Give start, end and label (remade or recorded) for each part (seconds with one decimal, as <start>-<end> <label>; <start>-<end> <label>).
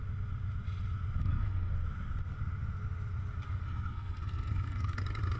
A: 0.0-1.2 recorded; 1.2-1.7 remade; 1.7-3.6 recorded; 3.6-5.0 remade; 5.0-5.4 recorded